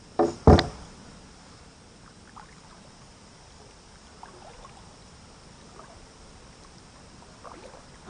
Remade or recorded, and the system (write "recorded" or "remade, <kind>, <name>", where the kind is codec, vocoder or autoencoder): remade, vocoder, BigVGAN v2